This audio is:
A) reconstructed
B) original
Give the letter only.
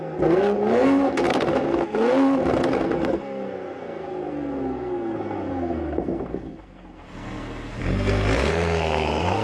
A